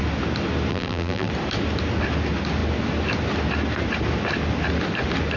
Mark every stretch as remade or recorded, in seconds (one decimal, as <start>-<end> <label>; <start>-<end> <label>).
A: 0.0-0.7 recorded; 0.7-1.3 remade; 1.3-5.4 recorded